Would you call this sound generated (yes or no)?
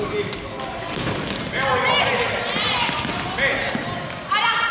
no